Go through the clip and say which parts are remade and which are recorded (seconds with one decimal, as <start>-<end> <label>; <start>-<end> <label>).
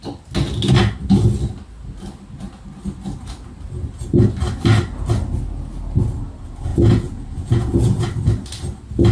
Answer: 0.0-6.7 recorded; 6.7-8.0 remade; 8.0-9.1 recorded